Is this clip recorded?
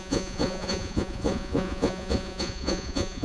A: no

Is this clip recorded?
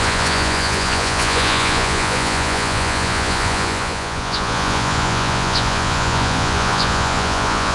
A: no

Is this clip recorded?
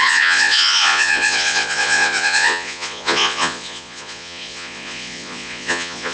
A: no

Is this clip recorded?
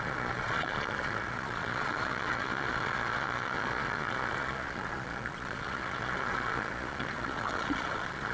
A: no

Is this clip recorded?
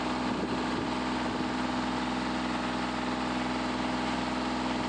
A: yes